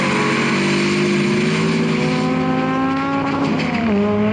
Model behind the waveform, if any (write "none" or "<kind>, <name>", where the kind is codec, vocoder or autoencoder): none